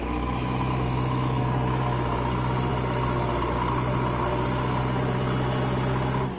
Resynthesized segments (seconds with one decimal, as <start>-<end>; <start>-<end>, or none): 0.0-1.4